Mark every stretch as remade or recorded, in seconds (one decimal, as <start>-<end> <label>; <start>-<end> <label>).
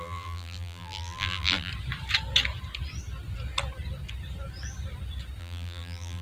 0.0-1.7 remade; 1.7-5.4 recorded; 5.4-6.2 remade